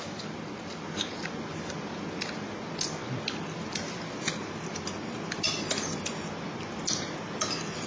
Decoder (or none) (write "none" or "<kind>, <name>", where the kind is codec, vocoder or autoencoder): none